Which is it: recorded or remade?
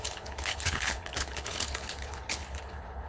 remade